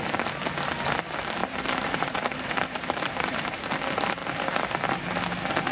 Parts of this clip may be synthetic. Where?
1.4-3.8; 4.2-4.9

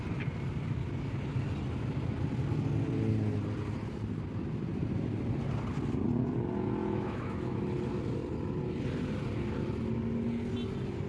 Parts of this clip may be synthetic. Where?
6.8-7.6

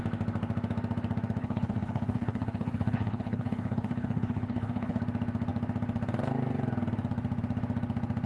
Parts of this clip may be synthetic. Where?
1.4-5.0